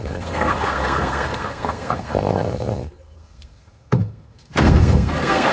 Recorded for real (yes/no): no